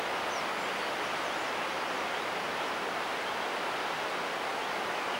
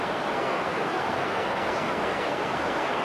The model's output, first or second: second